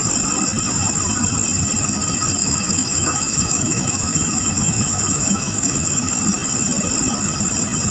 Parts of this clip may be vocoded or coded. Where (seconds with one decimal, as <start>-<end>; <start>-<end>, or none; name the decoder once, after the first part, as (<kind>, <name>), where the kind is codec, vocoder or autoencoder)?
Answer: 2.4-6.1 (autoencoder, DAC-VAE)